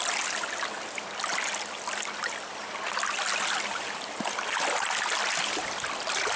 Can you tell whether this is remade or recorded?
recorded